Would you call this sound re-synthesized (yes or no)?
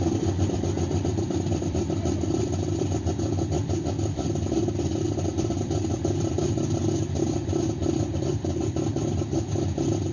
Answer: yes